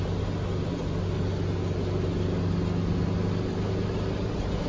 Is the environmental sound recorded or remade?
recorded